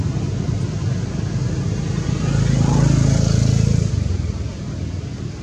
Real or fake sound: real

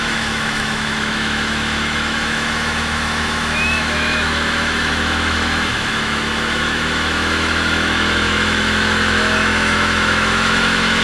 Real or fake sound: fake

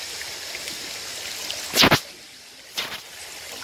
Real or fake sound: real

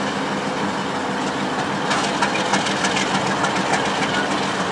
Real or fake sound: real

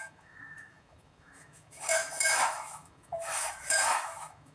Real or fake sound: fake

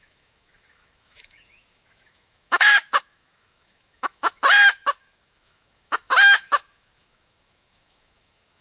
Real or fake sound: fake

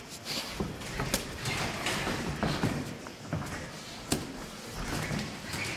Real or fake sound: real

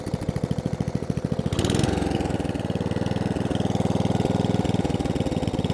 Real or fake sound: real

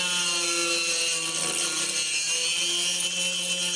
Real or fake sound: real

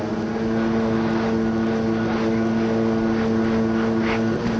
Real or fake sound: real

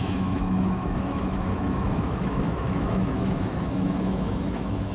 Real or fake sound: fake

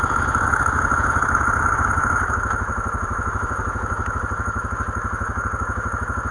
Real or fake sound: fake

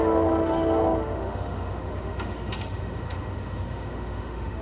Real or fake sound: fake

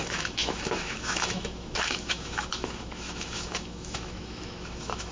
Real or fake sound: fake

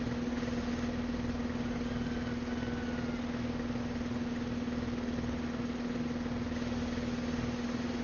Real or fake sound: real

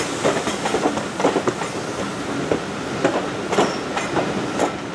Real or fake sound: real